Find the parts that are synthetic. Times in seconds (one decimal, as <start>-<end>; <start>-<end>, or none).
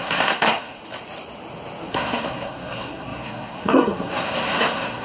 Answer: 0.0-0.8; 1.9-5.0